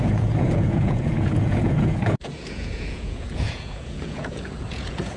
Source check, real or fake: fake